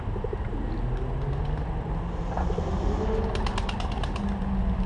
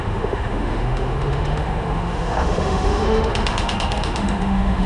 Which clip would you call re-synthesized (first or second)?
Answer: second